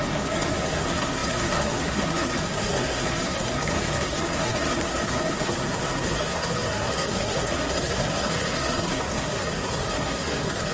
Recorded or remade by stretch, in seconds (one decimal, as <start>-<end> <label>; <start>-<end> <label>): 0.0-10.7 remade